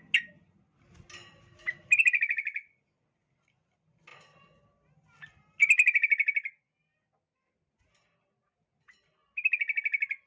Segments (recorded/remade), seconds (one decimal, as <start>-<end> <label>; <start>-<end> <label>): 0.0-10.3 recorded